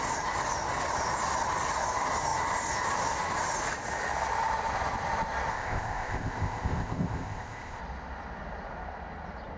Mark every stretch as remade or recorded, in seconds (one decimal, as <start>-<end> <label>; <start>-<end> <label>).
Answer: 0.0-5.5 recorded; 5.5-7.8 remade; 7.8-9.6 recorded